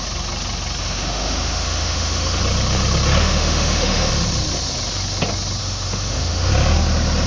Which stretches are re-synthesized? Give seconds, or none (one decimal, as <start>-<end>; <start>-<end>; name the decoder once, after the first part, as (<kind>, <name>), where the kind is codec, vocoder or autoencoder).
0.8-2.4 (autoencoder, DAC-VAE); 3.2-4.1; 5.6-6.5